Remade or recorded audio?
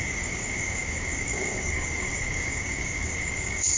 remade